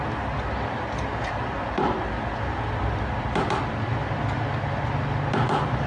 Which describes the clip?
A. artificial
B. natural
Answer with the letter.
B